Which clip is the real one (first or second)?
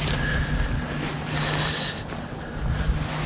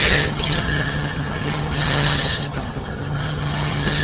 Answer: first